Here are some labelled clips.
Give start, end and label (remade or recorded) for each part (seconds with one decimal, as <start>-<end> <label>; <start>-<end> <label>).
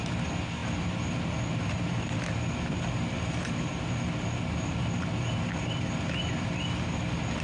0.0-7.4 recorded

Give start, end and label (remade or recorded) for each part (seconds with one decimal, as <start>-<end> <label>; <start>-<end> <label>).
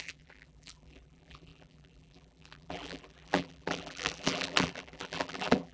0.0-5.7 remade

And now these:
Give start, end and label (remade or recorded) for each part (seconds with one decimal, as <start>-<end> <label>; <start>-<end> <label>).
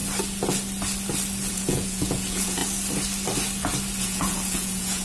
0.0-1.5 recorded; 1.5-2.6 remade; 2.6-4.0 recorded; 4.0-5.0 remade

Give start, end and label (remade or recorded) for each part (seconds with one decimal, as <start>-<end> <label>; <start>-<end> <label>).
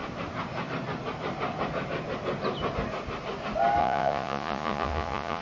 0.0-3.8 recorded; 3.8-5.4 remade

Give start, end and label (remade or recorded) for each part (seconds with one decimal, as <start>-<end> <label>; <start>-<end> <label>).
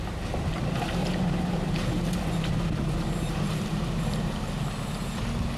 0.0-1.0 recorded; 1.0-4.4 remade; 4.4-5.6 recorded